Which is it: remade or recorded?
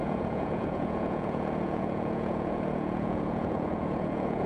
remade